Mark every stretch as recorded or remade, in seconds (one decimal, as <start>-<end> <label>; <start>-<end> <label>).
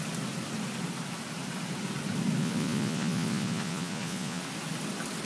0.0-2.4 recorded; 2.4-4.4 remade; 4.4-5.2 recorded